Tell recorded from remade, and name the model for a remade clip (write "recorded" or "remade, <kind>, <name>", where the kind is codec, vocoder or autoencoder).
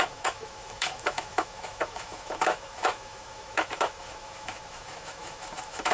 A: remade, autoencoder, DAC-VAE